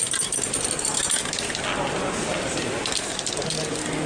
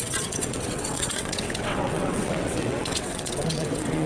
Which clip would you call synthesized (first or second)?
second